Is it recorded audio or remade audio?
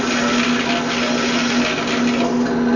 recorded